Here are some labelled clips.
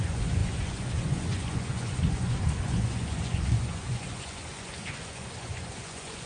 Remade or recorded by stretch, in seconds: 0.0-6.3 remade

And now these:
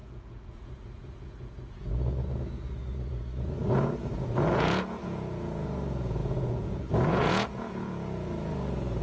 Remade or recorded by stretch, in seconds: 0.0-9.0 remade

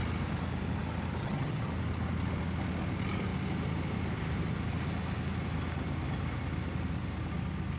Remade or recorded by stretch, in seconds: 0.0-1.2 recorded; 1.2-1.7 remade; 1.7-7.8 recorded